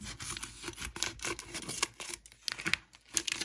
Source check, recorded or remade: recorded